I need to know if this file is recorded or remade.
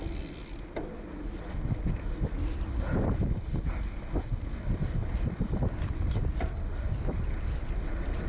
recorded